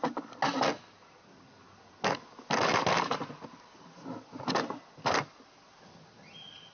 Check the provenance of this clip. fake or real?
real